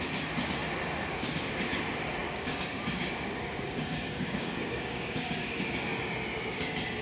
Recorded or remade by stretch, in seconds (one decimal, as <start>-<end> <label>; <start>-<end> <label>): 0.0-2.2 recorded; 2.2-5.4 remade; 5.4-7.0 recorded